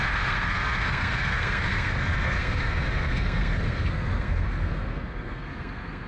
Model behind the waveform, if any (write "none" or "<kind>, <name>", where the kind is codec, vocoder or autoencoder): codec, SNAC